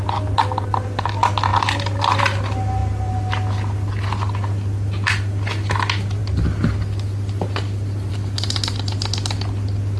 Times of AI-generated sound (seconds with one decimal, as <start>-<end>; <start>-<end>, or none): none